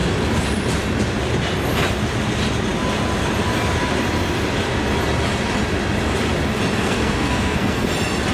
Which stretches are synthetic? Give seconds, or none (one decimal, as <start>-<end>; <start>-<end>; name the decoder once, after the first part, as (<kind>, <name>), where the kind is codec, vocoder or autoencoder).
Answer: 6.8-7.9 (codec, SNAC)